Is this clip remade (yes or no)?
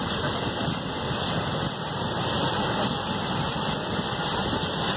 no